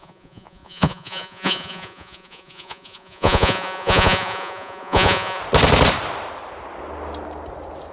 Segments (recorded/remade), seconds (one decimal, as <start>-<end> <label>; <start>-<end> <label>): 0.0-5.4 remade; 5.4-7.9 recorded